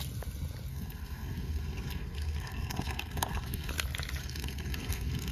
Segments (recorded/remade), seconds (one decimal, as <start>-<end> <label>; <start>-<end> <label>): 0.0-0.7 recorded; 0.7-3.7 remade; 3.7-4.2 recorded; 4.2-5.3 remade